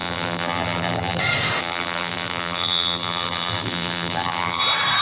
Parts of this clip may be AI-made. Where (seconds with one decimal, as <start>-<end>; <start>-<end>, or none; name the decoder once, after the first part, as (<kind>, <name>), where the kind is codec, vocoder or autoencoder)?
0.0-1.2 (vocoder, BigVGAN v2); 1.6-4.6